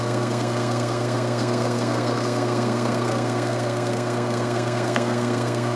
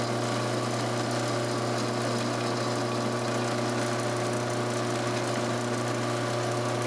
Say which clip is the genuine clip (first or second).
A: second